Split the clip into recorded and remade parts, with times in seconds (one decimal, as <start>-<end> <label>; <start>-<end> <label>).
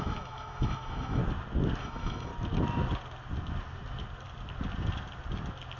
0.0-1.2 remade; 1.2-1.8 recorded; 1.8-2.3 remade; 2.3-5.8 recorded